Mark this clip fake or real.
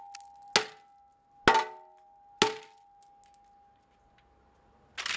real